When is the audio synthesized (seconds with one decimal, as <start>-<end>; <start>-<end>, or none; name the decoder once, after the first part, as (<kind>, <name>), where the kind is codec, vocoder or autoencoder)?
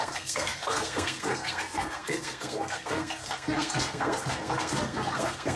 0.0-5.6 (codec, SNAC)